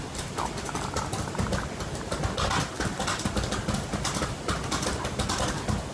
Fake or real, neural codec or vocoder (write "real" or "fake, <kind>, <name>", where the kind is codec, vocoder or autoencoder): real